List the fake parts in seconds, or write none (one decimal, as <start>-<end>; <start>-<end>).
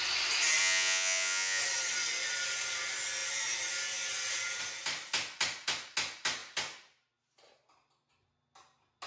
0.6-1.6